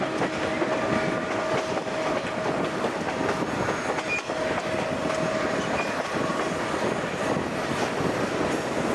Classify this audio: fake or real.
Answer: real